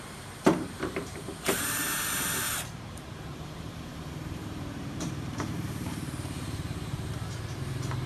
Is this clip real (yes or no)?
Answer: no